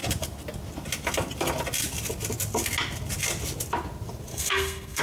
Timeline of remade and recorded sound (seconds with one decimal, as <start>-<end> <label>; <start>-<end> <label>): 0.0-4.3 recorded; 4.3-5.0 remade